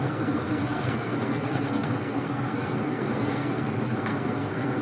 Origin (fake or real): fake